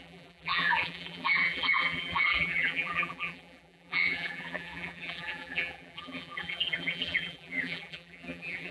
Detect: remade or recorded remade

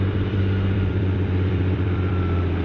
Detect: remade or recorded remade